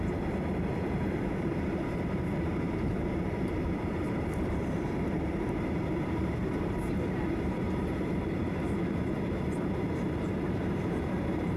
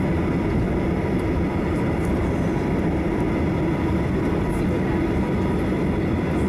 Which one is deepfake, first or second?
first